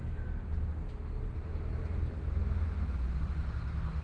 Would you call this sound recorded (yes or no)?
yes